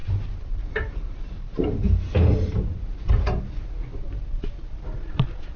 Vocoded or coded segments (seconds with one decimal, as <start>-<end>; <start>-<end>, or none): 0.0-3.4